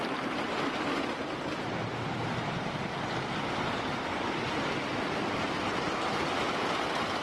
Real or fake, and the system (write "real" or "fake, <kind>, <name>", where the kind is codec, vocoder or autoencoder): real